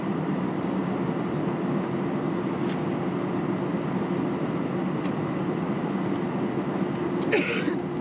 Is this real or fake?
real